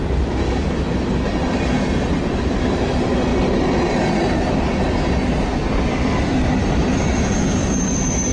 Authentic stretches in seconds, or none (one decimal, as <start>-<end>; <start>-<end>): 0.0-8.3

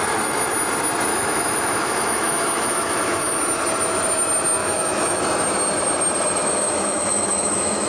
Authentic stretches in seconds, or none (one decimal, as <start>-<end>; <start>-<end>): 0.0-1.1; 3.4-4.6; 5.2-6.4

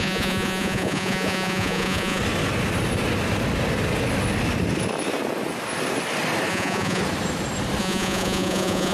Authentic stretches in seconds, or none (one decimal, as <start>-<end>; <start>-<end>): 2.2-6.5; 7.0-7.8

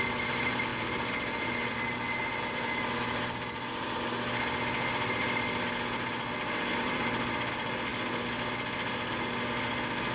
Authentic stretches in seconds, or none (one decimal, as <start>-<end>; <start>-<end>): 0.0-0.7; 2.4-6.7; 7.5-10.1

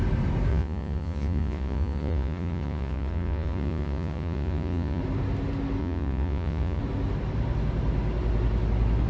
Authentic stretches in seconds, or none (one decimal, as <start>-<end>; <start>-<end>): 0.0-0.5; 5.0-5.8; 6.8-9.1

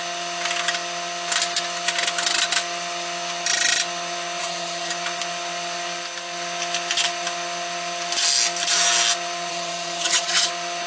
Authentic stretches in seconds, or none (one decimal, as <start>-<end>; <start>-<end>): 0.0-4.4; 4.9-9.5; 10.5-10.9

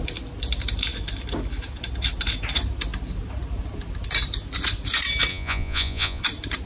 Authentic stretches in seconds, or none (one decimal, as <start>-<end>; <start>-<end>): 0.0-5.3; 6.2-6.7

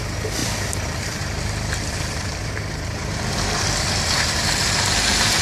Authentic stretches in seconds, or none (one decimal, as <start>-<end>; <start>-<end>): none